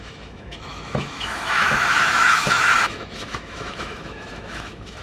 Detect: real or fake fake